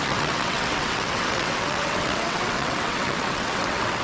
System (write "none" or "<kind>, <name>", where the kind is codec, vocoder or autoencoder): vocoder, WaveNeXt